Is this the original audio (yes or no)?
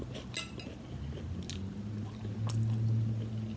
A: yes